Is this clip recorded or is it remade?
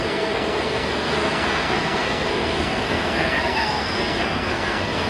remade